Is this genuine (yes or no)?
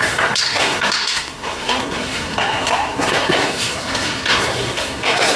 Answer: no